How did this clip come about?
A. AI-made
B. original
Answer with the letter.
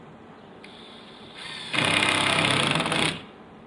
B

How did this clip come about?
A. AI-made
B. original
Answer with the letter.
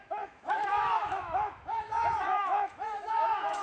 A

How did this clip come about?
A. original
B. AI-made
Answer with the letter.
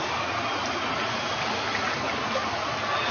A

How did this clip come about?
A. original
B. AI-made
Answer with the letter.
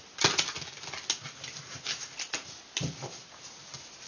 A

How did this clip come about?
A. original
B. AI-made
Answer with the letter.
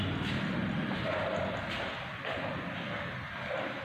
A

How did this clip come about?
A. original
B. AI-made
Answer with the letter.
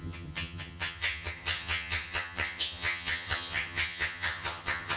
B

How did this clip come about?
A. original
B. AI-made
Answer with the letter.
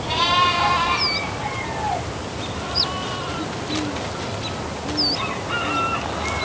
A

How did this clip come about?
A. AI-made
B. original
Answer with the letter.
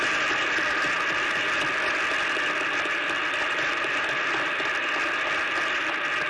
B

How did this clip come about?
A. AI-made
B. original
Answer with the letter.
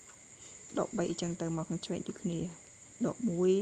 B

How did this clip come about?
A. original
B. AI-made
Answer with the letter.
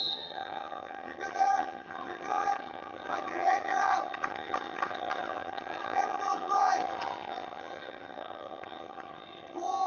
B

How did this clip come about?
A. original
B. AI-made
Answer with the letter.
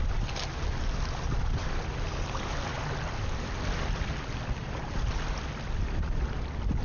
A